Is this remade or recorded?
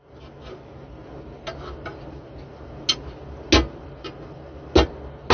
recorded